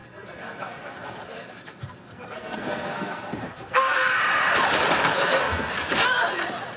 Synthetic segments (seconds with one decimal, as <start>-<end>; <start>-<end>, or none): 0.0-4.1; 5.1-5.7